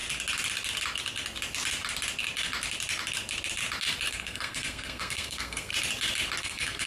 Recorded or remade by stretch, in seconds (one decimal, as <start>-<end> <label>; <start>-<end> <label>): 0.0-4.1 recorded; 4.1-5.7 remade; 5.7-6.4 recorded; 6.4-6.9 remade